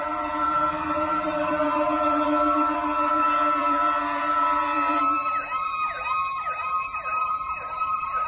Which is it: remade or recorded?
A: remade